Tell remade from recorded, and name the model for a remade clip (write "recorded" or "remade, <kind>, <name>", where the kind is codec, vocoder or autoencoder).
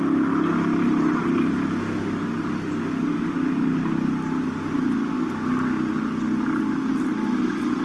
recorded